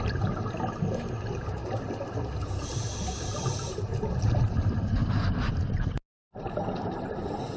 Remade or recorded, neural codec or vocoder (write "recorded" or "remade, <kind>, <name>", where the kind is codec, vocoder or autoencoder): recorded